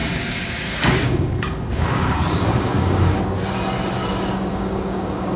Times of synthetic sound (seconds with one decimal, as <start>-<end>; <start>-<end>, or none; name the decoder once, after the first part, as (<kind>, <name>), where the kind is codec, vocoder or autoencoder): 0.0-3.2 (codec, DAC); 4.5-5.4